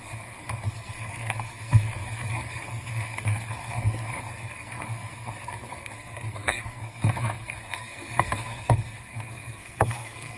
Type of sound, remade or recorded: remade